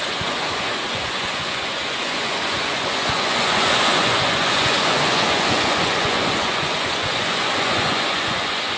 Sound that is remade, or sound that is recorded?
remade